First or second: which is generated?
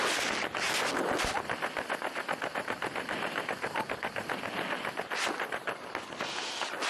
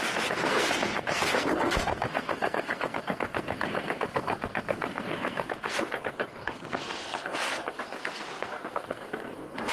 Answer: second